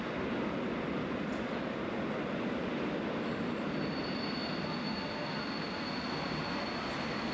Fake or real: real